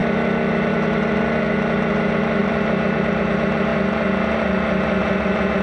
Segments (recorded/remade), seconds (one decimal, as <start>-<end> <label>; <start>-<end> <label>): 0.0-2.4 recorded; 2.4-3.2 remade; 3.2-5.6 recorded